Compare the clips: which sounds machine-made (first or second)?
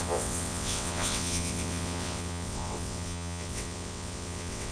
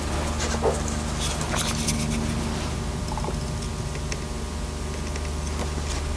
first